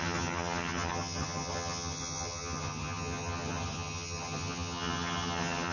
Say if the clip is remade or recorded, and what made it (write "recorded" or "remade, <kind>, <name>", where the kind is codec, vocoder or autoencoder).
remade, vocoder, HiFi-GAN